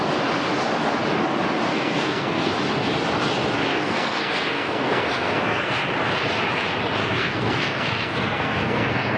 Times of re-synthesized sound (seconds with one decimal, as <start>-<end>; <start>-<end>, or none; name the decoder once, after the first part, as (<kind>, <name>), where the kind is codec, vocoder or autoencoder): 1.7-2.5 (codec, SNAC); 3.7-5.7; 7.0-9.2